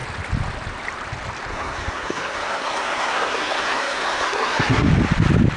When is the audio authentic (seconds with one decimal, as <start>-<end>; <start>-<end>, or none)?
0.0-1.5; 4.9-5.6